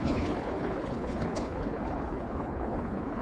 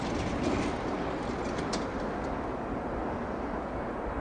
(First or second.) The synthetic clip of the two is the first